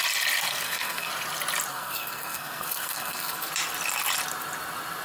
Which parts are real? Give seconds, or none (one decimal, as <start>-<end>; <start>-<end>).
0.0-0.5; 1.1-1.7; 3.5-5.0